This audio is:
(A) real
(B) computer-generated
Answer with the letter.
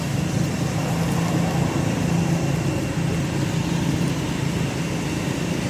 B